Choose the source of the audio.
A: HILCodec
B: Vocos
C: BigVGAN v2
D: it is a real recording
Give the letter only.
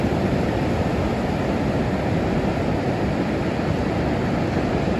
D